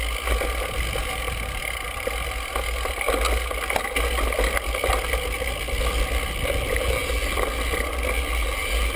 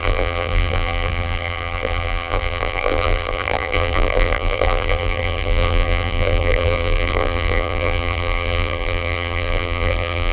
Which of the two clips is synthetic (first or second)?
second